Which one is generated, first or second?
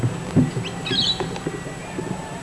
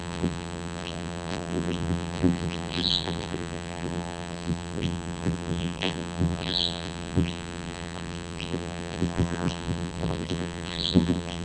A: second